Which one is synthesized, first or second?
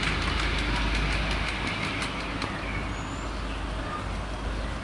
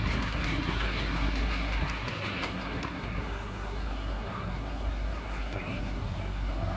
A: second